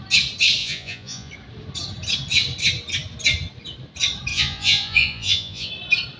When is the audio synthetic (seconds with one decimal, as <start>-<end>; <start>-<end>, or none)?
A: 0.6-1.3; 4.3-5.7